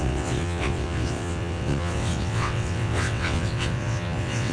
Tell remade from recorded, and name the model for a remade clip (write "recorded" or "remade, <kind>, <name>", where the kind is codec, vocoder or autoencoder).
remade, vocoder, WaveNeXt